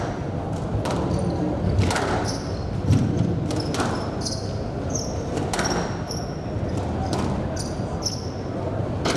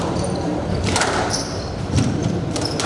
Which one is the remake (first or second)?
second